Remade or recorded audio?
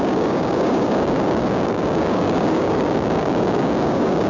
remade